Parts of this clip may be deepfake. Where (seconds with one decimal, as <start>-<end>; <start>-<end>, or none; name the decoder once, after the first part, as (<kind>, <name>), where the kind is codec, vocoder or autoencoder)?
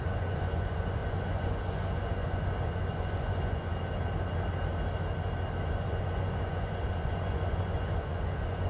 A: 0.0-3.7 (vocoder, Vocos); 5.7-8.7